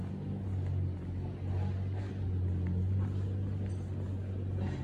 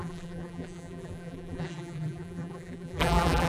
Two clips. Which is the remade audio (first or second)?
second